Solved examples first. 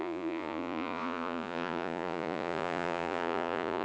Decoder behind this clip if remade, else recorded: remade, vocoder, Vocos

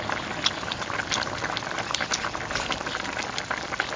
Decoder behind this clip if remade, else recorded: recorded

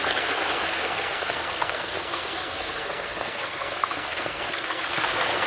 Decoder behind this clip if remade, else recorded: remade, codec, SNAC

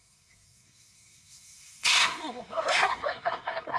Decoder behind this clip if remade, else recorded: remade, codec, SNAC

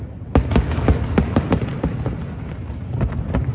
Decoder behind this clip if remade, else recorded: recorded